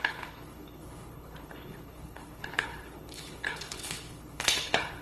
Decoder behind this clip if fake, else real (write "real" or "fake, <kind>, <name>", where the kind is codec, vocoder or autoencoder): fake, codec, HILCodec